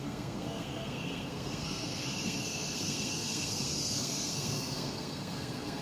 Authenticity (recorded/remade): remade